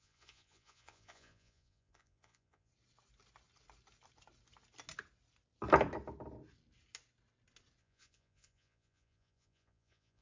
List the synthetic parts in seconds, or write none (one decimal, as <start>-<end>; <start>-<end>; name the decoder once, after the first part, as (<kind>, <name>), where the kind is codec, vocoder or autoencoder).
0.0-2.7 (vocoder, Vocos); 7.8-10.2